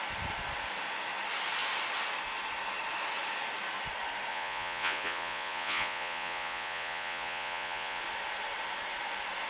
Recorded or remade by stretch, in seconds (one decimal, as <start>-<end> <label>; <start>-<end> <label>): 0.0-4.3 recorded; 4.3-8.0 remade; 8.0-9.5 recorded